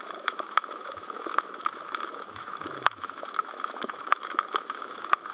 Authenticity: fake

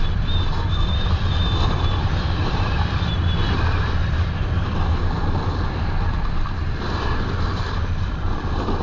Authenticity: real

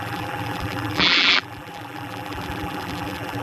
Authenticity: fake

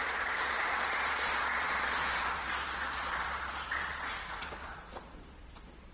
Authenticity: fake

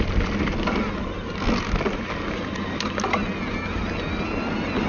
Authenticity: real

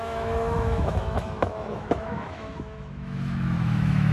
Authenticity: fake